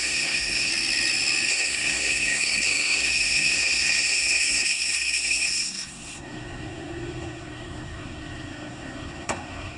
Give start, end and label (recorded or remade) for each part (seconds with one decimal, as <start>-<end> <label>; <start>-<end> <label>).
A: 0.0-0.7 remade; 0.7-1.5 recorded; 1.5-9.8 remade